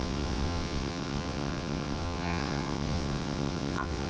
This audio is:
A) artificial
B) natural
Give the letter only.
A